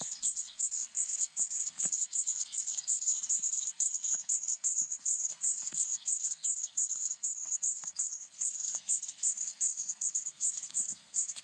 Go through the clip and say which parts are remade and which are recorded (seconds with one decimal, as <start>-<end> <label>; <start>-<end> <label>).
0.0-11.4 remade